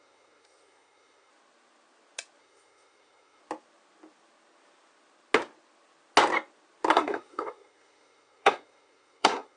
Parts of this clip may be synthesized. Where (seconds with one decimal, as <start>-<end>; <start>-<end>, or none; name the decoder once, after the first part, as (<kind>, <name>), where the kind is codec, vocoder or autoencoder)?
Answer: 0.0-1.3 (codec, SNAC); 2.4-3.4; 6.9-9.6

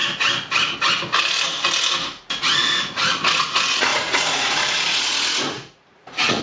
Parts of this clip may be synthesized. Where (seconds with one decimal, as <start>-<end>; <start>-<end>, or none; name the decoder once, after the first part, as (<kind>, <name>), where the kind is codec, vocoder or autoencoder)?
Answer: 2.4-6.4 (vocoder, Vocos)